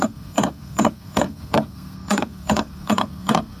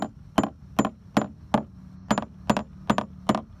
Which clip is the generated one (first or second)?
first